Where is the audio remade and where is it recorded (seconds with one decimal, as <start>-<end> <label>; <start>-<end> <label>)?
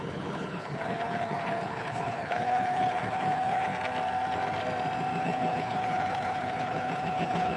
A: 0.0-3.7 remade; 3.7-5.2 recorded; 5.2-7.6 remade